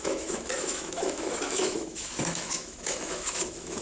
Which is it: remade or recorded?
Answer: remade